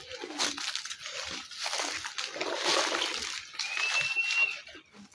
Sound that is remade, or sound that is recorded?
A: recorded